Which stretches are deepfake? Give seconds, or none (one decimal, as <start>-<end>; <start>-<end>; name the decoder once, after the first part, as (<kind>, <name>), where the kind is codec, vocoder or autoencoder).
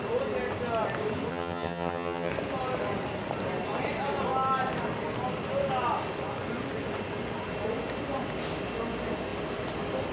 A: 1.3-2.3 (vocoder, HiFi-GAN)